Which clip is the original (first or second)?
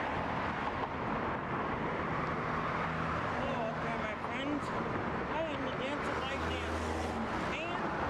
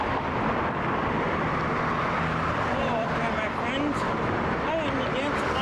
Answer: first